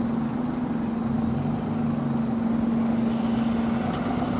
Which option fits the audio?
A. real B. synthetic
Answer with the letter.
A